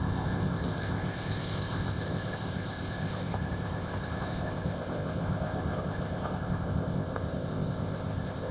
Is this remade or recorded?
remade